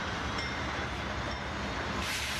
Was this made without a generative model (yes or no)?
no